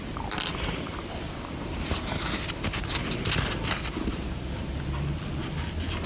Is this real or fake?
real